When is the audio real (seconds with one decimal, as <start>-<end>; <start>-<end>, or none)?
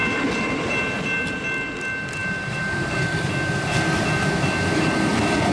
0.8-2.2; 4.2-5.5